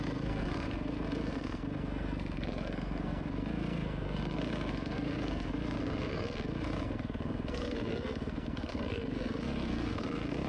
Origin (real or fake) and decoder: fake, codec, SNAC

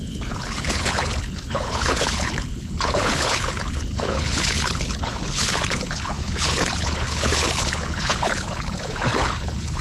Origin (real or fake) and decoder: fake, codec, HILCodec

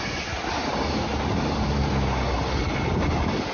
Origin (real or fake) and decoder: real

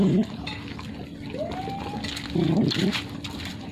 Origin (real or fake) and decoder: real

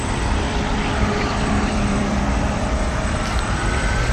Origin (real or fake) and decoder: fake, vocoder, BigVGAN v2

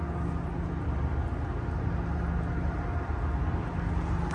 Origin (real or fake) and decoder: real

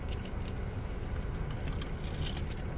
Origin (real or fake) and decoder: real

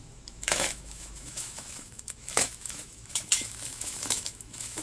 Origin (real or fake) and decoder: fake, autoencoder, DAC-VAE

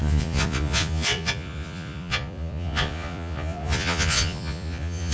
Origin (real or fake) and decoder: fake, vocoder, Vocos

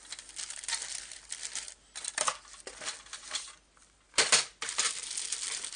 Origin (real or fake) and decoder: real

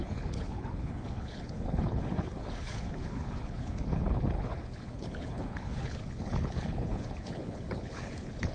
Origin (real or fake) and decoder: fake, codec, HILCodec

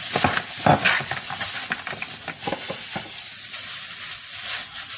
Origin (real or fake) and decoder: real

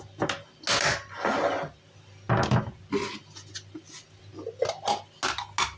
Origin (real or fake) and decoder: real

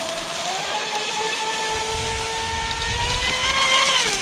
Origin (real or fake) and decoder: real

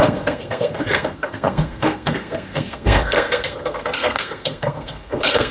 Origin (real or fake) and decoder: fake, codec, SNAC